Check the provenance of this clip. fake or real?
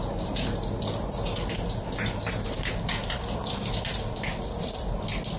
real